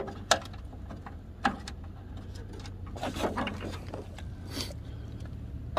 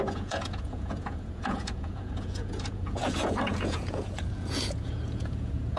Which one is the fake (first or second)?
second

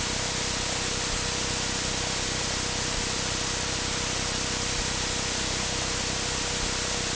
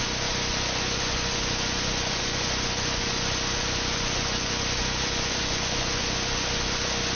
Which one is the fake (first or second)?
second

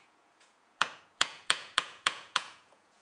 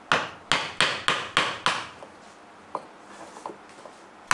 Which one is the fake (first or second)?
first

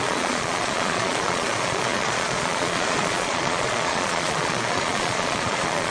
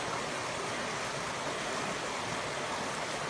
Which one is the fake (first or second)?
first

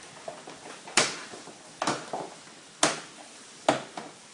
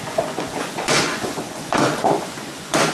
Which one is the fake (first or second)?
second